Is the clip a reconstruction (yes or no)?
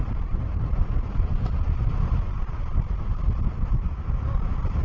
no